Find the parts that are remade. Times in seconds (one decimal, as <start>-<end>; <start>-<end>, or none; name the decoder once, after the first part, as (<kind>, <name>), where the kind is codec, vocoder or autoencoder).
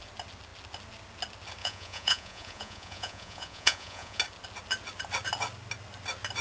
1.6-4.2 (vocoder, Vocos)